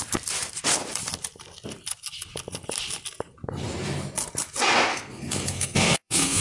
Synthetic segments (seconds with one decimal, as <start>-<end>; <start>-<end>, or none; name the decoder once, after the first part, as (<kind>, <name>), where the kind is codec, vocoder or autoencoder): 4.9-6.4 (codec, SNAC)